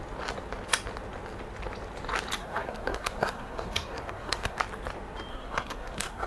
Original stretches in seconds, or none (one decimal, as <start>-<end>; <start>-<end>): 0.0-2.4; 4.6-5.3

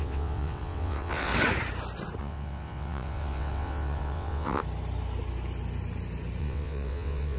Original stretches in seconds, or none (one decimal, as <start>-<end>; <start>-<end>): 1.3-2.2; 4.6-6.4

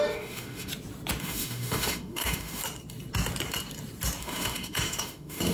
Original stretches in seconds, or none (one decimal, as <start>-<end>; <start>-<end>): 0.7-1.2; 2.6-4.2

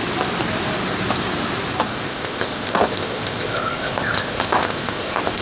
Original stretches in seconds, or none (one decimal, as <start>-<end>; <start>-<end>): 0.0-1.9